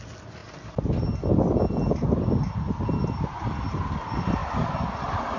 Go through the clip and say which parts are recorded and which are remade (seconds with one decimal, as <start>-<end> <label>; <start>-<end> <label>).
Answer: 0.0-5.4 recorded